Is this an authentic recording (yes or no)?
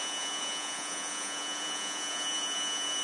no